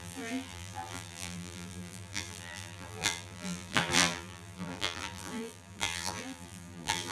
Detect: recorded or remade remade